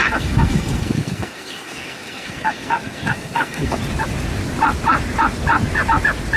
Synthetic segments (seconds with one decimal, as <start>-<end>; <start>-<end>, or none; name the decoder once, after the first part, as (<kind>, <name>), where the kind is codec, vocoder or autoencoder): 0.0-3.8 (codec, SNAC)